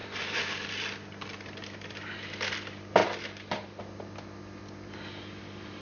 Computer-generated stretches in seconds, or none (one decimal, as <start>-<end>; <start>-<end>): none

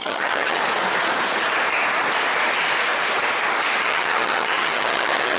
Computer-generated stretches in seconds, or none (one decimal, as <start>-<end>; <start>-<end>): 0.0-0.6; 3.8-5.4

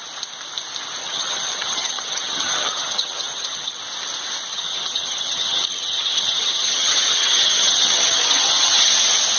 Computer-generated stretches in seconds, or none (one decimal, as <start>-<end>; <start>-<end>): 1.0-3.8; 4.5-8.9

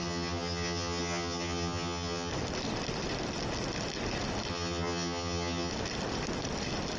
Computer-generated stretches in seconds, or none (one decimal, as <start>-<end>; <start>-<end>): 0.0-2.3; 4.5-5.7